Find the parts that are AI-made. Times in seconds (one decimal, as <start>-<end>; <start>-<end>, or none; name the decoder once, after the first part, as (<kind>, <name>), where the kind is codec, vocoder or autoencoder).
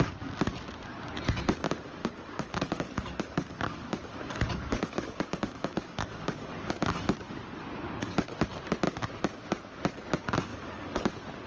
2.0-6.7 (codec, DAC); 10.5-11.0